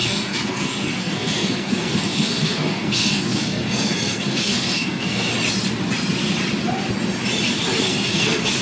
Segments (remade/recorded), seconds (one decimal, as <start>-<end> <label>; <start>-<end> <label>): 0.0-5.3 remade; 5.3-7.8 recorded; 7.8-8.6 remade